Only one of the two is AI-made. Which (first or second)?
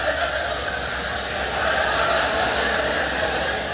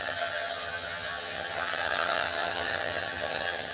second